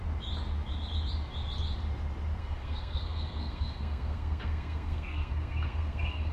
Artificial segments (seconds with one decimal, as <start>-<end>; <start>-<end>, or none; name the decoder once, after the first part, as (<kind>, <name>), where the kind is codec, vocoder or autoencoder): 2.4-6.3 (codec, SNAC)